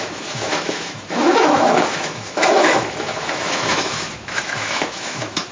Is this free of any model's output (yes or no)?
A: no